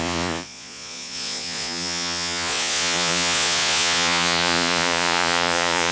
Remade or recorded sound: remade